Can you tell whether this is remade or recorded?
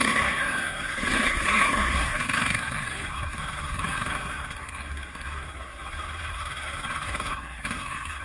remade